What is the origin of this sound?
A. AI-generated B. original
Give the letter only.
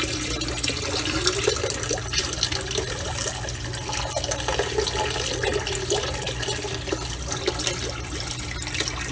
B